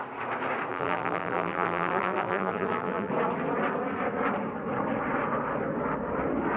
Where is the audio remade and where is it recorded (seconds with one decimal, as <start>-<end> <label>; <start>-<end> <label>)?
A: 0.0-0.7 recorded; 0.7-3.1 remade; 3.1-6.6 recorded